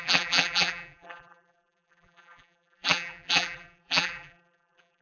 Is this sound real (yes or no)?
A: no